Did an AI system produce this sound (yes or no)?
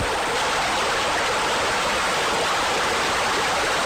no